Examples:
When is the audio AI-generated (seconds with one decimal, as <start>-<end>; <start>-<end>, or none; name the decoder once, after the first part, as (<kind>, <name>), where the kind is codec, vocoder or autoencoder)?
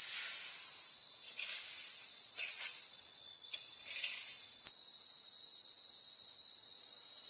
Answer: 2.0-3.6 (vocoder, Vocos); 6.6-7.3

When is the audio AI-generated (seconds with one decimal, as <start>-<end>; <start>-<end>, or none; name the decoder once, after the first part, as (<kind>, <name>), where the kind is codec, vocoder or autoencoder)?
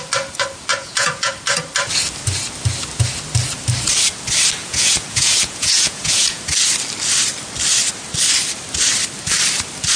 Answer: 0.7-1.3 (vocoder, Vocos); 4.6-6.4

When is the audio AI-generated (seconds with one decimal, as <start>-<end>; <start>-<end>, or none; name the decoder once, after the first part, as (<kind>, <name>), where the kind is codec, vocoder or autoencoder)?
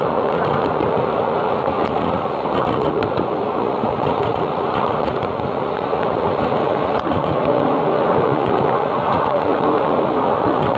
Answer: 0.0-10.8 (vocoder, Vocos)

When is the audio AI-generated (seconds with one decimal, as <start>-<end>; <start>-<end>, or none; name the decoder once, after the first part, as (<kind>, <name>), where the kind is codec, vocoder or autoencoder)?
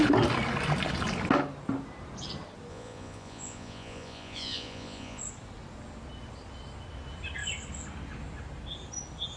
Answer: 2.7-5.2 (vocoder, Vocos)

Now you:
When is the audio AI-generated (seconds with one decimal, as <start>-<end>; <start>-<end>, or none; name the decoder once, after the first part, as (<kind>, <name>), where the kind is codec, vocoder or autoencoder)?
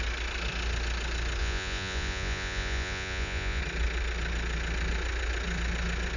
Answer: 1.4-3.6 (vocoder, Vocos)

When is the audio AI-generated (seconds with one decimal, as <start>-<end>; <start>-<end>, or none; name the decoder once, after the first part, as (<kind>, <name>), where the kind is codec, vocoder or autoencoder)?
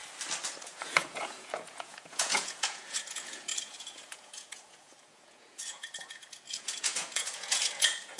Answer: 0.6-8.2 (vocoder, Vocos)